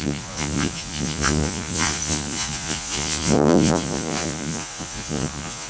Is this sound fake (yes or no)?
yes